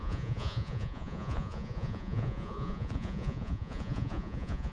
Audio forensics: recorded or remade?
remade